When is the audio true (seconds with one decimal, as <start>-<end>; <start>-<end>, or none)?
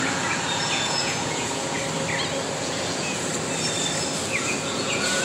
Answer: 1.8-2.6; 3.3-4.3